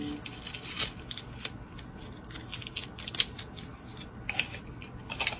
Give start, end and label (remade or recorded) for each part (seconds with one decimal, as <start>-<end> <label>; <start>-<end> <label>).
0.0-5.4 recorded